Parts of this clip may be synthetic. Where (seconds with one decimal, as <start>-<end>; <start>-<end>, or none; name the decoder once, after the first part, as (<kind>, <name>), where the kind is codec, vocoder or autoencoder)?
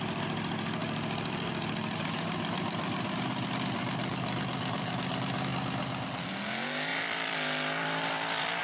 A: 0.0-5.5 (vocoder, BigVGAN v2); 6.2-8.6